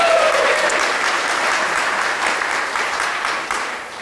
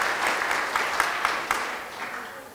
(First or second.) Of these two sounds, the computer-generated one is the first